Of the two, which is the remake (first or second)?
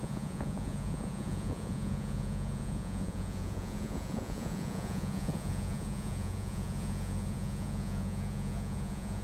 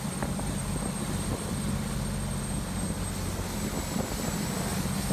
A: first